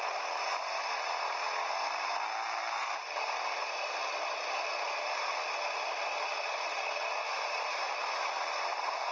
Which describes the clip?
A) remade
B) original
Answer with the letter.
B